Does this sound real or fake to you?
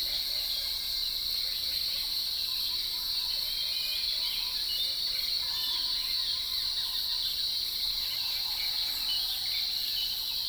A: real